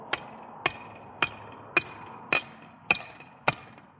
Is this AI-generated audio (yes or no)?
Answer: no